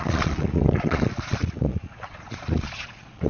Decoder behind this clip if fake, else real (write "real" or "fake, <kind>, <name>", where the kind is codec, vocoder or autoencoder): fake, vocoder, Vocos